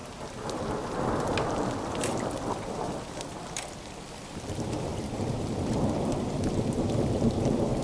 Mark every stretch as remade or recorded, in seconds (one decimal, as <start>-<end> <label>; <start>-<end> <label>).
0.0-7.8 remade